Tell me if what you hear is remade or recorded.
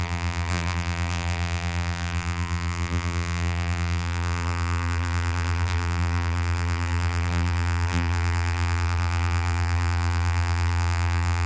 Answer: remade